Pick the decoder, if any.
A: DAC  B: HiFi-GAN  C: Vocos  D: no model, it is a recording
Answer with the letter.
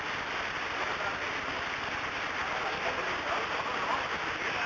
D